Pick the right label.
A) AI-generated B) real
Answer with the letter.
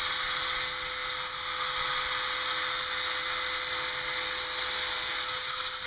B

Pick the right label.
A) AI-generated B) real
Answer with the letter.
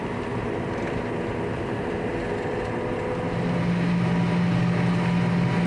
B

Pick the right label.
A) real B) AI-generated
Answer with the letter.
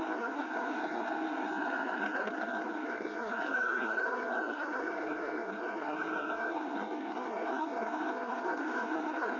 B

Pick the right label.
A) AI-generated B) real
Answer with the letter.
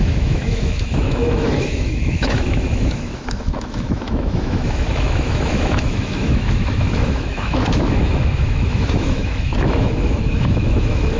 A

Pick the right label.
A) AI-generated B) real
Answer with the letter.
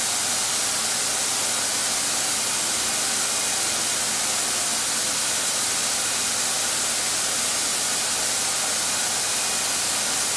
B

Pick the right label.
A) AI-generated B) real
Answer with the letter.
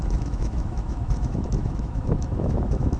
A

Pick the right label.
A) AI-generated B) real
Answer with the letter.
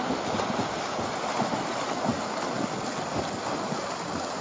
B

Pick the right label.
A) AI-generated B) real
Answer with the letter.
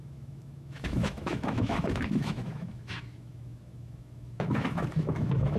A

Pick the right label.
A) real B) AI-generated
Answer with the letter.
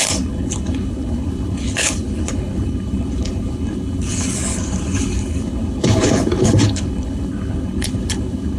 B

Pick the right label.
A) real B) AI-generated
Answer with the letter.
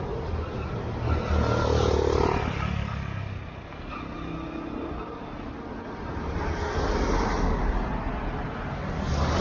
A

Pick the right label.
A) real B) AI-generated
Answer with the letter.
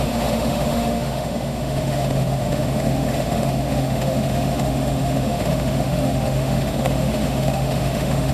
B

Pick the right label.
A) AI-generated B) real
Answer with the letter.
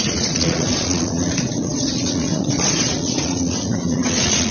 A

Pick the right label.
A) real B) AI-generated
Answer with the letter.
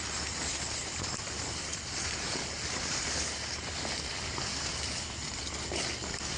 A